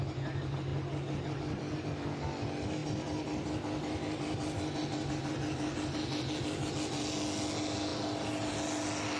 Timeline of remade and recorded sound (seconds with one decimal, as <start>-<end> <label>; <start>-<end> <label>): 0.0-9.2 recorded